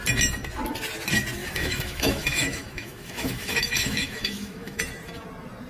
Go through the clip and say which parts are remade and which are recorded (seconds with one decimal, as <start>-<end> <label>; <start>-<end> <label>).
0.0-1.4 recorded; 1.4-4.8 remade; 4.8-5.7 recorded